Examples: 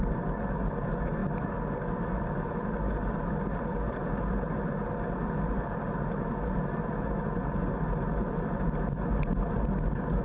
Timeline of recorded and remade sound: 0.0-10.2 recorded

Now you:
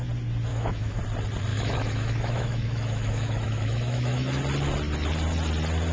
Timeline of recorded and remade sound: 0.0-0.5 recorded; 0.5-1.0 remade; 1.0-1.5 recorded; 1.5-4.4 remade; 4.4-5.9 recorded